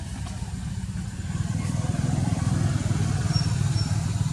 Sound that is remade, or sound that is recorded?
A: recorded